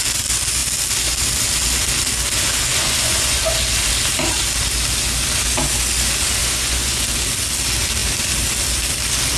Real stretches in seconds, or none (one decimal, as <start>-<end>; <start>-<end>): 0.0-2.7; 3.4-6.4; 7.0-9.4